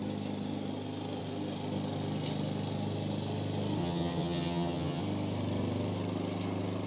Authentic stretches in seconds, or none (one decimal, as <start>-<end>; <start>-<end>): 0.0-3.8; 5.0-6.9

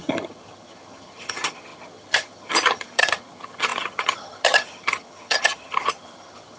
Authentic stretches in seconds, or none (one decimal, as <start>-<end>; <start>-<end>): none

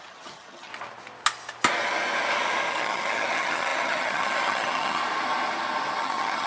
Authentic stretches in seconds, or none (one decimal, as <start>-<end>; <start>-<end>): 0.7-2.7; 5.0-6.0

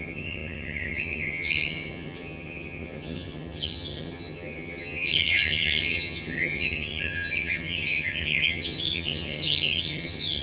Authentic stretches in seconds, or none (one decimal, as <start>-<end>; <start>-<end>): none

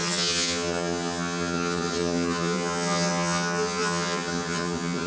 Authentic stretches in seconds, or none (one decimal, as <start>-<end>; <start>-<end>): none